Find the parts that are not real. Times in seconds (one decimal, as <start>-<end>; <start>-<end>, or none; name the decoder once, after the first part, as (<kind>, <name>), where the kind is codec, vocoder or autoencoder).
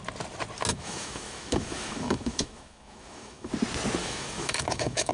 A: 0.7-3.5 (autoencoder, DAC-VAE); 4.0-5.1